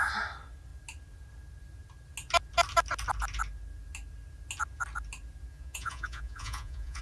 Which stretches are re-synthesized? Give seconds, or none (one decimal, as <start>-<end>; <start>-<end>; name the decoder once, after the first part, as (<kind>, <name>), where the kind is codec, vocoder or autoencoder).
5.5-7.0 (vocoder, Vocos)